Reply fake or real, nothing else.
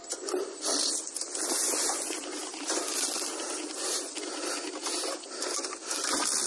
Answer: real